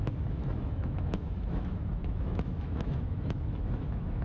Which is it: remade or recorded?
remade